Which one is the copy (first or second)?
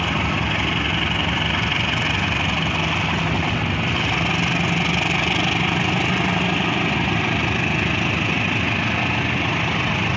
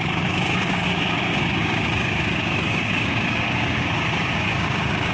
second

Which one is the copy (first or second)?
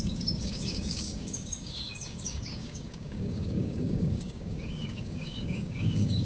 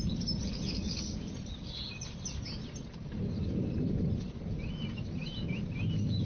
first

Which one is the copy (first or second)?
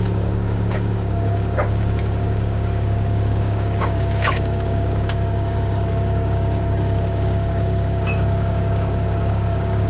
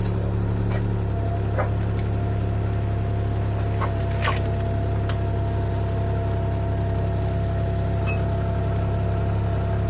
first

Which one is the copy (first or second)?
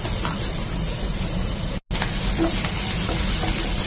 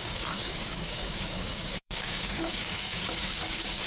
second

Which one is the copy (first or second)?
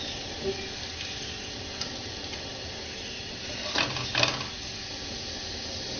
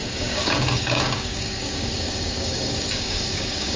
second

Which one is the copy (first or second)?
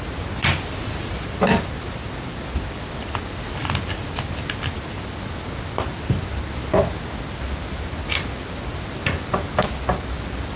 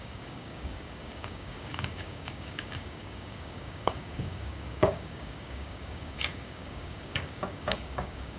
second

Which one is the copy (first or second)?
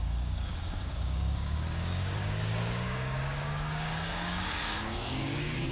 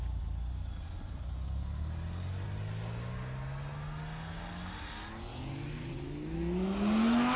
first